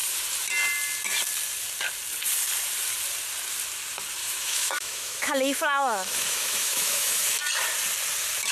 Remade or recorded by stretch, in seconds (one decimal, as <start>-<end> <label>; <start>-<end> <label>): 0.0-4.2 recorded; 4.2-7.4 remade; 7.4-8.5 recorded